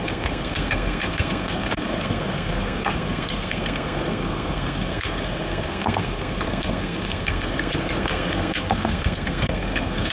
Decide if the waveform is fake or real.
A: fake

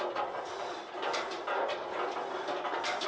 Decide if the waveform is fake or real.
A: real